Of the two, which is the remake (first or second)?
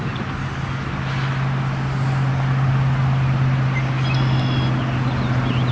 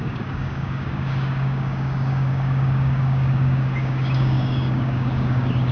second